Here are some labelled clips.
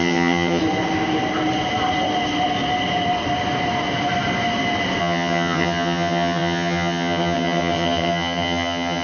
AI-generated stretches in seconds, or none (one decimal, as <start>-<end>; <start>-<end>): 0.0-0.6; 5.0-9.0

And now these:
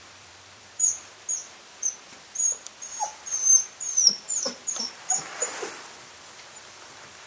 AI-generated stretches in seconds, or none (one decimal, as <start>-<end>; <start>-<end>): 0.0-7.3

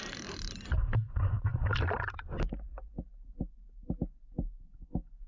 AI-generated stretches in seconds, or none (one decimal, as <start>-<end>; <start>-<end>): none

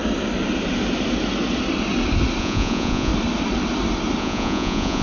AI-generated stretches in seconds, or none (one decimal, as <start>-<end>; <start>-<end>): 2.4-3.1; 4.2-5.0

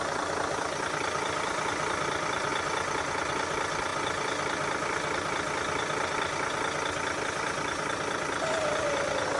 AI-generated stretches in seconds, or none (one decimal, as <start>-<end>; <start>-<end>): 0.0-2.5; 3.0-3.9; 7.2-9.4

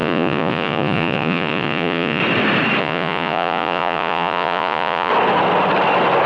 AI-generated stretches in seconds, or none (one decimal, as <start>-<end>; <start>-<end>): 0.0-2.2; 2.8-5.1

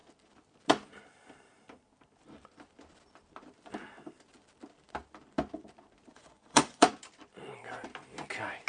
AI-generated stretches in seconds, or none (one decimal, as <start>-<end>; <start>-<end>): 6.1-6.9

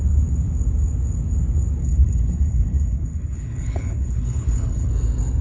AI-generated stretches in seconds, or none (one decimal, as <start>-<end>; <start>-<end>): 1.8-4.9